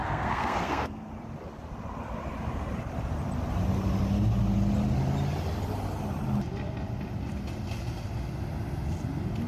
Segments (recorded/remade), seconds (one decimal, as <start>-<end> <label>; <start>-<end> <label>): 0.0-1.1 remade; 1.1-9.5 recorded